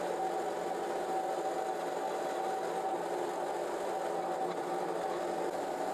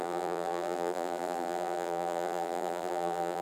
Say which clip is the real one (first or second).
first